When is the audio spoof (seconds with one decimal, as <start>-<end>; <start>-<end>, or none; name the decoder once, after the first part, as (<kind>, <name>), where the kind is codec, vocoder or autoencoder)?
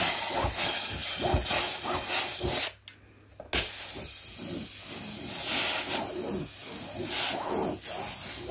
none